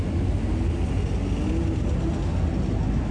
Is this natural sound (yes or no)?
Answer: yes